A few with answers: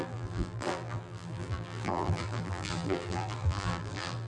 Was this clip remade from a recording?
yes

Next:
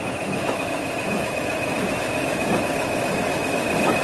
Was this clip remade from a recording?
yes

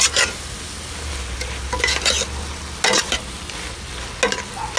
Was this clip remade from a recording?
no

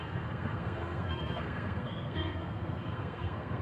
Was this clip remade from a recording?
yes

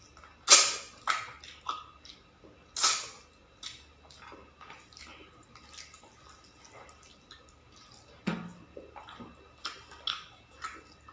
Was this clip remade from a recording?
no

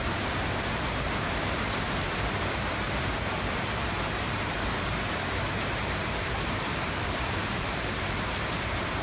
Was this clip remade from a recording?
yes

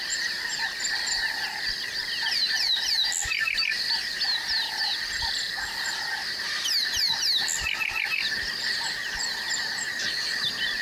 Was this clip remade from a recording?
no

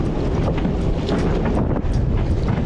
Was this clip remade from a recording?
no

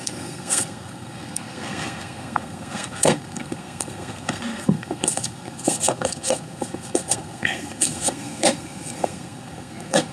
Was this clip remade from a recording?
yes